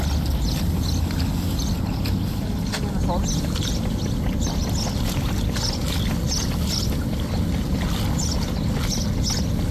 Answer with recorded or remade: recorded